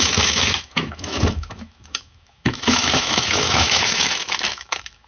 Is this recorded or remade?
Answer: remade